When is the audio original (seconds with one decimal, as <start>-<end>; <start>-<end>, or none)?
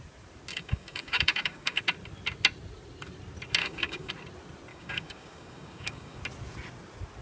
0.0-0.5; 1.8-3.6; 4.1-4.7; 6.2-7.2